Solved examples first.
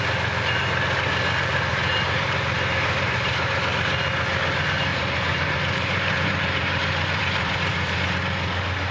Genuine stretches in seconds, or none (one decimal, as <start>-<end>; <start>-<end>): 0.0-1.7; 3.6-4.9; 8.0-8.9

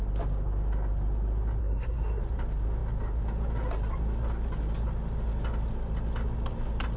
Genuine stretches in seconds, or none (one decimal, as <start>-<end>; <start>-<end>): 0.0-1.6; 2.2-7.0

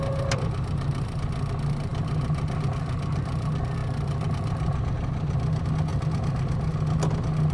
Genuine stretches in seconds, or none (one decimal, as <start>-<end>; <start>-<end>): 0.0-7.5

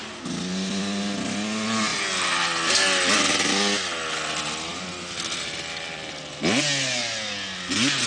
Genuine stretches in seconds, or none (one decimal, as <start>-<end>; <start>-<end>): 0.0-4.7; 6.4-8.1